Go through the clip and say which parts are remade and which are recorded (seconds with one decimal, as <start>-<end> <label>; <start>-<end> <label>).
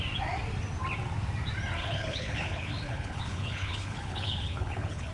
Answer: 0.0-1.8 recorded; 1.8-5.1 remade